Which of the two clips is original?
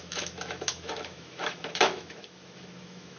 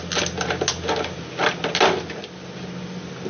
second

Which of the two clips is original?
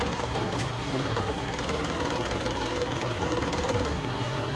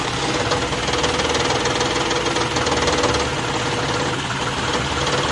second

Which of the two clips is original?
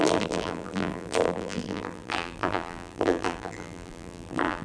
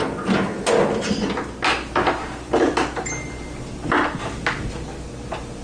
second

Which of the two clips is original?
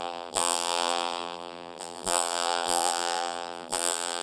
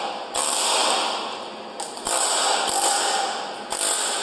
second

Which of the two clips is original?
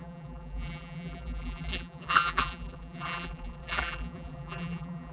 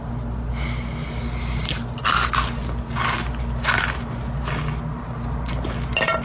second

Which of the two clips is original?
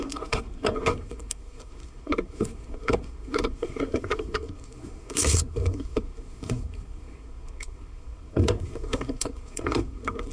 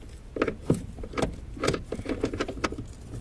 second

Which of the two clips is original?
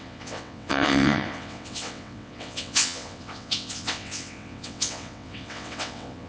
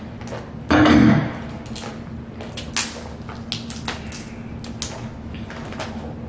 second